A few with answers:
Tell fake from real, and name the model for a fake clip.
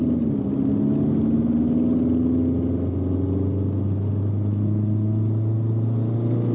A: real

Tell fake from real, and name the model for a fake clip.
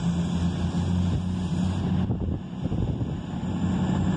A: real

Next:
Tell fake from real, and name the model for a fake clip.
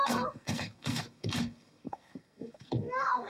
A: fake, codec, SNAC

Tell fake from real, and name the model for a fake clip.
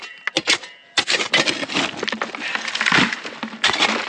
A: real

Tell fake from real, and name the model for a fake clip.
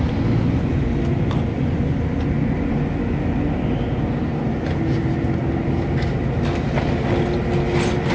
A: real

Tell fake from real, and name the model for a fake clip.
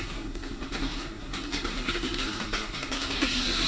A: fake, codec, SNAC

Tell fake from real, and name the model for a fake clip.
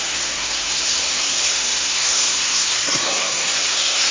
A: fake, codec, SNAC